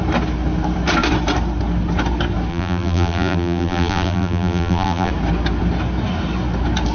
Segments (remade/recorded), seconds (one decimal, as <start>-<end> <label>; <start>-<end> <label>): 0.0-2.5 recorded; 2.5-5.1 remade; 5.1-6.9 recorded